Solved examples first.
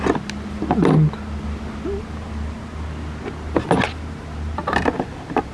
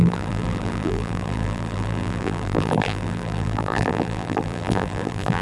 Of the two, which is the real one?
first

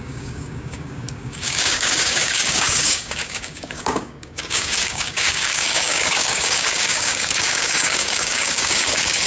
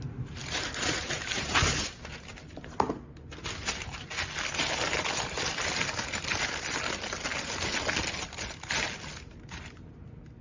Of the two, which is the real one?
second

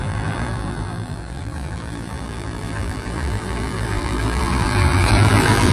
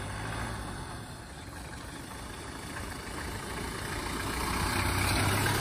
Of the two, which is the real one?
second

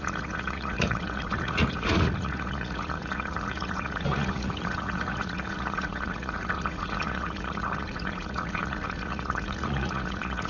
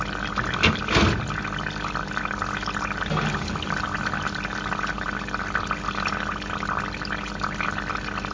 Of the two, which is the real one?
second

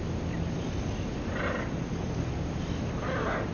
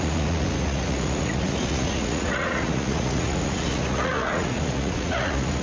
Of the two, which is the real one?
first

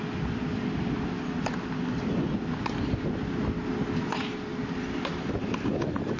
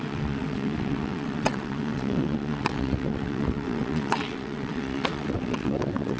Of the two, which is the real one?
first